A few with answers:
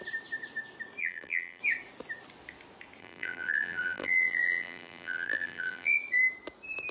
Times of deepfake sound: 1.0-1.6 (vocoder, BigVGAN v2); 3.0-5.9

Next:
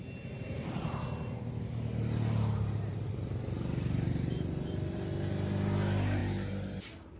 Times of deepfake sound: none

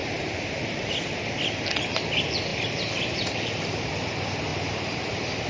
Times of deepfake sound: 0.0-0.9 (vocoder, BigVGAN v2); 2.5-3.9; 4.5-5.5

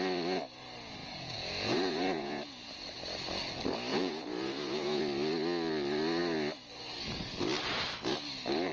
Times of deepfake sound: 1.0-2.7 (vocoder, Vocos); 3.9-5.0

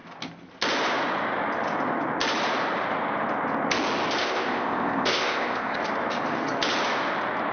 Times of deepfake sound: 4.2-5.8 (codec, ZipCodec)

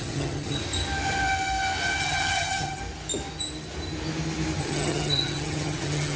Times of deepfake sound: 0.0-0.6 (vocoder, HiFi-GAN); 2.0-2.8; 4.6-6.2

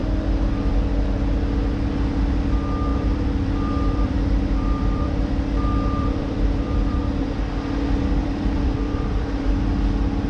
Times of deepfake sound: 2.9-7.0 (vocoder, BigVGAN v2); 8.2-9.5